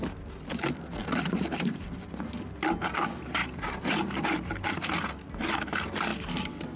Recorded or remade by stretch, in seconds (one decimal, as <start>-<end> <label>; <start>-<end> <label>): 0.0-1.0 recorded; 1.0-2.1 remade; 2.1-3.4 recorded; 3.4-4.7 remade; 4.7-6.8 recorded